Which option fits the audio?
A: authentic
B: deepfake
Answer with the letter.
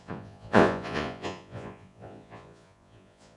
B